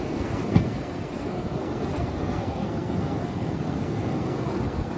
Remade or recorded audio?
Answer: remade